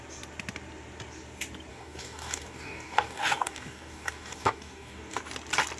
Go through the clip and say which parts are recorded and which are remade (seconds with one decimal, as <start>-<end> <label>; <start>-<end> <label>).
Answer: 0.0-1.7 recorded; 1.7-5.2 remade; 5.2-5.8 recorded

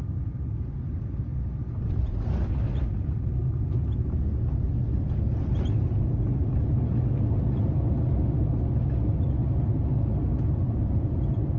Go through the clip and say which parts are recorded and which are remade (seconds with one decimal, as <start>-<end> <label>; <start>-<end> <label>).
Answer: 0.0-11.6 recorded

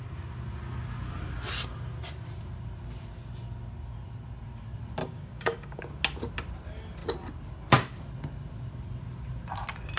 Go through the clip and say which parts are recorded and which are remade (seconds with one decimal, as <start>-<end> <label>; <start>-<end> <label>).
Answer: 0.0-5.0 recorded; 5.0-5.8 remade; 5.8-10.0 recorded